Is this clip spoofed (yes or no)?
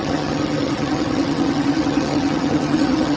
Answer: yes